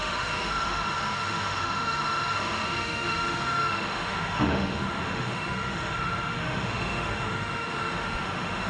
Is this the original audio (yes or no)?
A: no